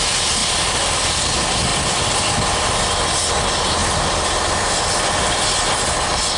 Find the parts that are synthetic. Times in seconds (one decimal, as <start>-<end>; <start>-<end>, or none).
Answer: 0.4-1.2; 3.8-5.0

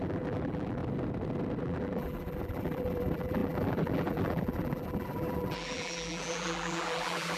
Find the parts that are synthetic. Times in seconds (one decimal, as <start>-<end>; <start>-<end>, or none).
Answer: 0.0-0.8; 1.6-7.4

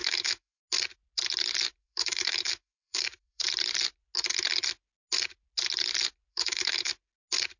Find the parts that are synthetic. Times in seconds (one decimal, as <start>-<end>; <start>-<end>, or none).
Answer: 0.0-0.6; 1.8-3.5; 6.3-6.9